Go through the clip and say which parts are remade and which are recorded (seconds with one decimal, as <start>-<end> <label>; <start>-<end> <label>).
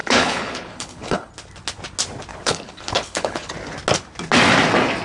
0.0-1.3 remade; 1.3-2.3 recorded; 2.3-3.5 remade; 3.5-5.0 recorded